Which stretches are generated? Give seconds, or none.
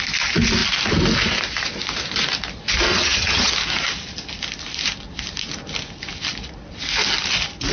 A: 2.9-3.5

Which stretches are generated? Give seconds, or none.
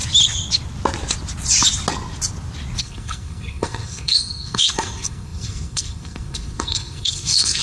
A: 2.8-7.6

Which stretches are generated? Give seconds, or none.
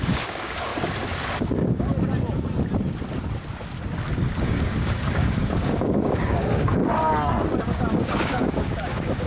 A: 0.0-0.7; 1.4-1.9; 4.4-6.8; 7.6-9.3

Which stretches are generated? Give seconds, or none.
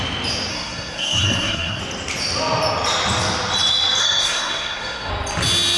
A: 0.5-1.8; 4.0-5.1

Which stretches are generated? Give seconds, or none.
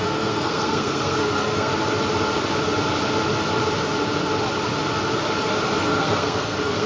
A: 0.0-1.7; 5.8-6.9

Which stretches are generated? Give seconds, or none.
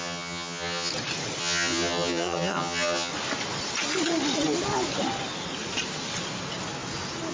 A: 0.0-0.9; 1.4-3.1